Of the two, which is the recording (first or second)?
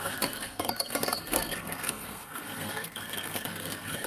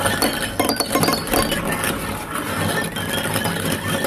second